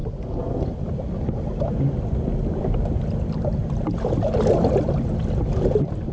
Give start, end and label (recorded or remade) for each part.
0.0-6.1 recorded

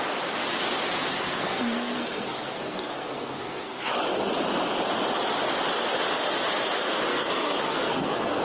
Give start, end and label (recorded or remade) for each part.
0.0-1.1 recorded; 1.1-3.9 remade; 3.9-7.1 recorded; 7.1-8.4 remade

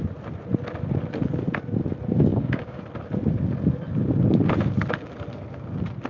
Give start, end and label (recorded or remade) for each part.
0.0-2.3 recorded; 2.3-2.8 remade; 2.8-6.1 recorded

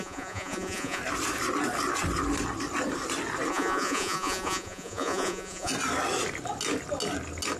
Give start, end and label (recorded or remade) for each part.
0.0-1.0 remade; 1.0-3.5 recorded; 3.5-5.7 remade; 5.7-7.6 recorded

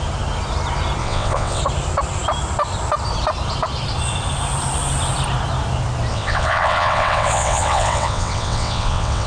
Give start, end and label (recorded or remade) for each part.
0.0-1.0 recorded; 1.0-1.6 remade; 1.6-6.1 recorded; 6.1-9.3 remade

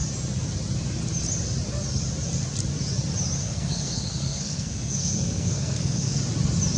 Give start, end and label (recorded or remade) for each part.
0.0-3.4 recorded; 3.4-6.2 remade; 6.2-6.8 recorded